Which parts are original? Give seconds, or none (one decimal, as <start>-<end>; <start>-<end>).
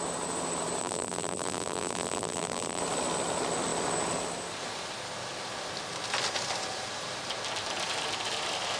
0.0-0.8; 2.8-8.8